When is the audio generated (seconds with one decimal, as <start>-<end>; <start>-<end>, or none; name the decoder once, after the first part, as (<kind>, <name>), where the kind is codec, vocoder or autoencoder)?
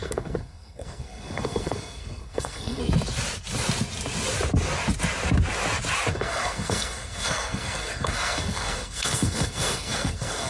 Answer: 0.0-2.8 (codec, SNAC); 6.1-10.5